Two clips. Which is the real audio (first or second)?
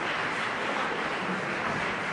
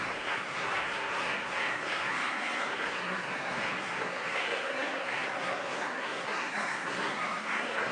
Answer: first